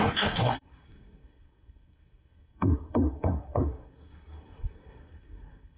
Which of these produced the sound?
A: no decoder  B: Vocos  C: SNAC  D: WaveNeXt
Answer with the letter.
C